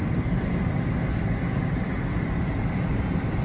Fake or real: real